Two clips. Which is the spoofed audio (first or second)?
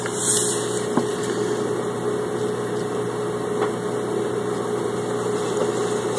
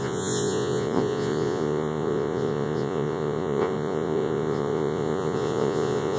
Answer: second